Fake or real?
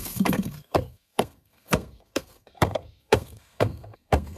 fake